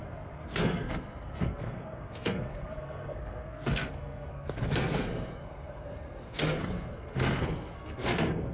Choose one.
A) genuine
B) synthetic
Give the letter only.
B